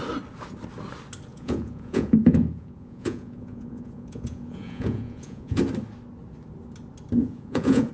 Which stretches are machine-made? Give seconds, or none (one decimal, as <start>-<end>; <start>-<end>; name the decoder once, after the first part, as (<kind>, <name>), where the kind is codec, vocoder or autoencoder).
1.3-5.6 (vocoder, Vocos); 7.2-7.9